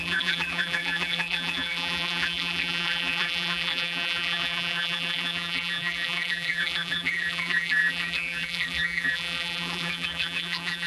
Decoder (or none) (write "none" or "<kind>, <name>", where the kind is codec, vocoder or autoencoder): vocoder, BigVGAN v2